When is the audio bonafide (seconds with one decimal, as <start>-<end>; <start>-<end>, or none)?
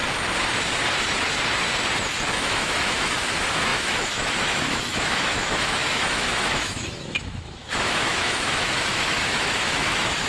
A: 0.0-2.2